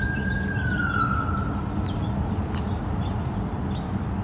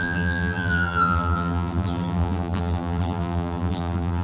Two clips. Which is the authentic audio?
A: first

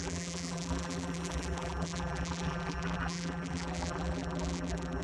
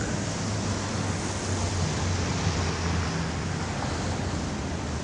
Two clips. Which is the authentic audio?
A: second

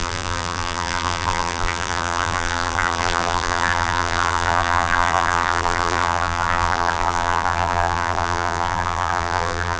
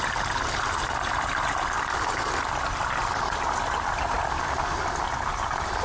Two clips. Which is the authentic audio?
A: second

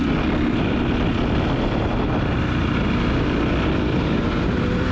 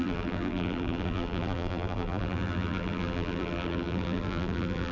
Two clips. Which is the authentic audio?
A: first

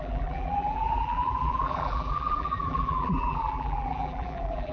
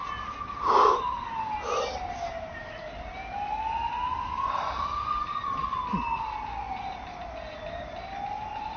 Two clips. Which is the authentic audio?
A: second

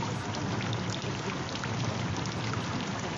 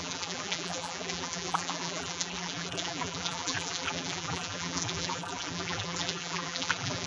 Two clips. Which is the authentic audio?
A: first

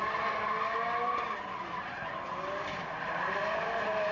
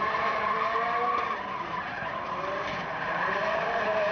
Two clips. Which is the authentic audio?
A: first